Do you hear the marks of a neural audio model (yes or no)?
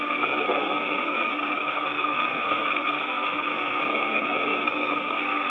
yes